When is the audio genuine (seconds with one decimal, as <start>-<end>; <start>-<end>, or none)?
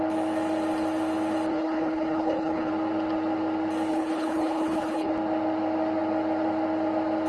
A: 0.0-1.5; 2.7-3.9; 5.1-7.3